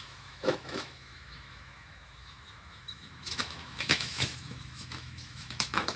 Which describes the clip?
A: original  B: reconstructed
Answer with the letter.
B